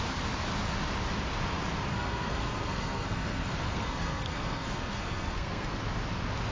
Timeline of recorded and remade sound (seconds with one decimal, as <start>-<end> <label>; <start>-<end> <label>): 0.0-1.9 recorded; 1.9-5.8 remade; 5.8-6.5 recorded